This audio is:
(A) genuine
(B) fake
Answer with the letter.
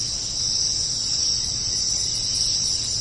A